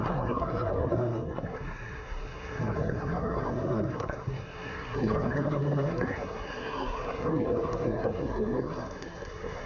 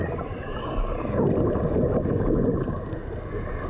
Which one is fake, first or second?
first